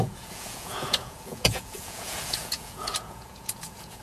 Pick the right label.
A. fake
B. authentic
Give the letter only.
A